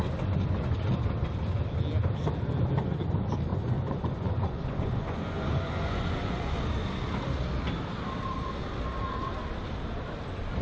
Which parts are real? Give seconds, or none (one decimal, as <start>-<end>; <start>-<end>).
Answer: 0.0-3.5; 6.6-10.6